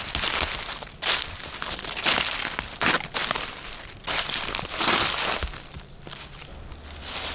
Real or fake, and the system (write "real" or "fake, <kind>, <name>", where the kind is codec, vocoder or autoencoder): real